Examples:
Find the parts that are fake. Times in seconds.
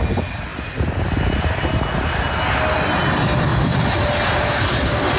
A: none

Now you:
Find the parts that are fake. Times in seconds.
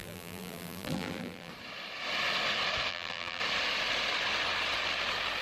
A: 0.0-1.5 (vocoder, BigVGAN v2); 2.9-3.4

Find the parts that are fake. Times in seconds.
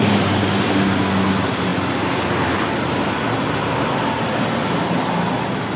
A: 1.7-2.7 (vocoder, BigVGAN v2)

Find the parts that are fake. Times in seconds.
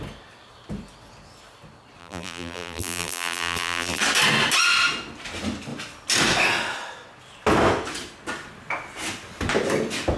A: 2.0-4.0 (vocoder, BigVGAN v2)